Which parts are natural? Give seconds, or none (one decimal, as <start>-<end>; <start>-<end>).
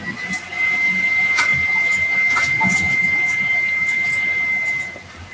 0.0-5.3